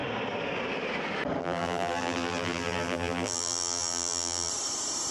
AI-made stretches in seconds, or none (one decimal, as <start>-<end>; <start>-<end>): 1.4-4.5